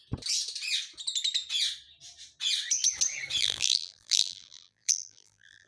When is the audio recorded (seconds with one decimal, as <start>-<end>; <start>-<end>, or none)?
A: 0.0-3.4